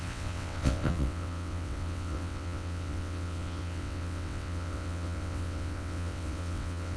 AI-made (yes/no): yes